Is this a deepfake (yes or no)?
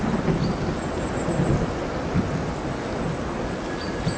no